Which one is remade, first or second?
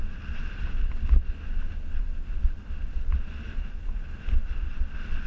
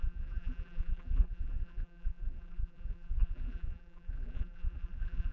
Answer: second